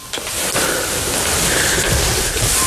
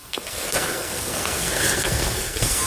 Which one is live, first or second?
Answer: first